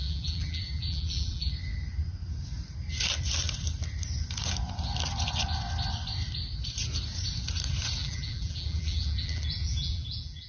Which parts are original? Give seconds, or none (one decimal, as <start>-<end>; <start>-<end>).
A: 1.5-8.0